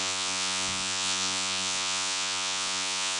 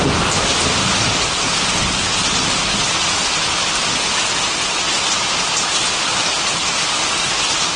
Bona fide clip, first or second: second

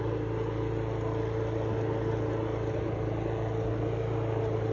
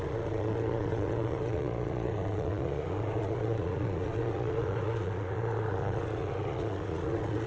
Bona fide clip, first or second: first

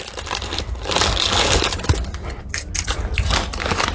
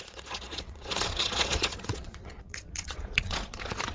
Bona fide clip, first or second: first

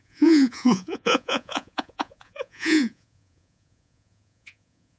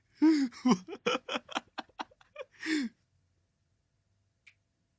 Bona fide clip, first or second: second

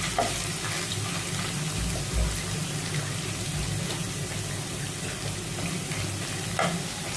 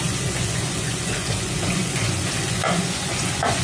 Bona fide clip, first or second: first